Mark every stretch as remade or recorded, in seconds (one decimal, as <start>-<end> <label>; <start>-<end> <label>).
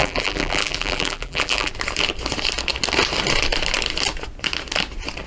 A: 0.0-1.7 remade; 1.7-5.3 recorded